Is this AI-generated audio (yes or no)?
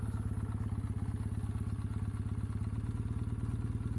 no